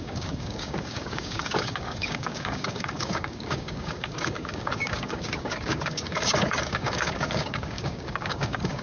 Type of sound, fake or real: fake